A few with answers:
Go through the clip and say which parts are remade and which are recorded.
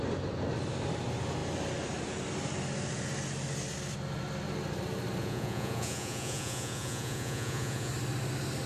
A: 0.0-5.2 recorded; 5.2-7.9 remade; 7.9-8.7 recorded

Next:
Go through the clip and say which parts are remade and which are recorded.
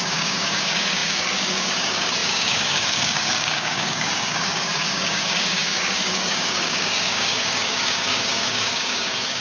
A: 0.0-9.4 remade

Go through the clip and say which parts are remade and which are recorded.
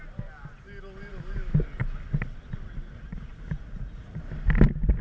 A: 0.0-3.1 recorded; 3.1-4.2 remade; 4.2-5.0 recorded